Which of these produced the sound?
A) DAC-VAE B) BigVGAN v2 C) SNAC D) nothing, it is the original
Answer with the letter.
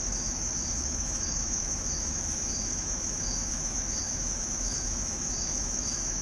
A